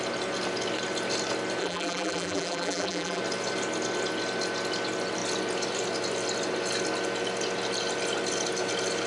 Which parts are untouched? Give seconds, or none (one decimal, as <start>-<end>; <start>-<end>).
0.0-1.6; 3.2-9.1